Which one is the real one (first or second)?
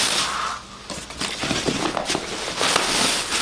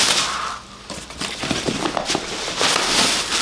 first